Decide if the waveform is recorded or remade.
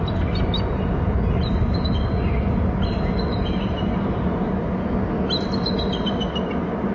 recorded